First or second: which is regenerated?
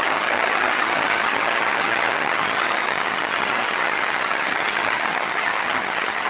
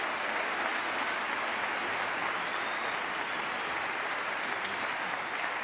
first